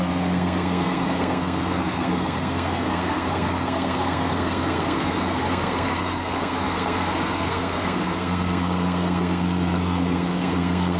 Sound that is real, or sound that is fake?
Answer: fake